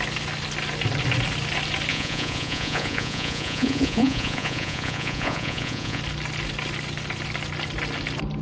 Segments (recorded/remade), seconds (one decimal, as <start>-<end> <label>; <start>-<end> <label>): 0.0-1.9 recorded; 1.9-6.0 remade; 6.0-8.4 recorded